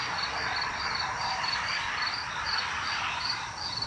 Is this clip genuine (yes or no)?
yes